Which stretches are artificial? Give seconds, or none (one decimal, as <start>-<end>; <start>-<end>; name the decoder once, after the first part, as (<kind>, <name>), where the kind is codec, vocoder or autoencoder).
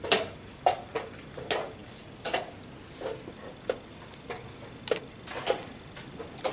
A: none